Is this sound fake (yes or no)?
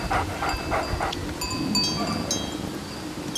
no